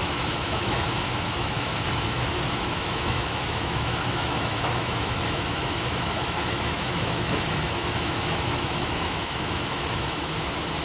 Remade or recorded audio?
remade